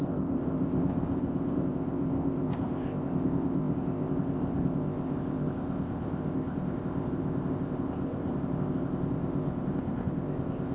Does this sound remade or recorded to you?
remade